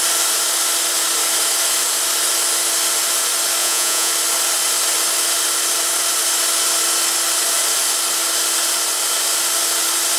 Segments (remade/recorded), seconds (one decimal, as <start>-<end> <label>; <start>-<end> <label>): 0.0-3.6 recorded; 3.6-4.1 remade; 4.1-10.2 recorded